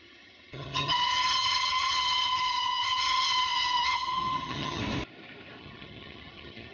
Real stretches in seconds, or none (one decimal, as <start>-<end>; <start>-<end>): 4.8-5.6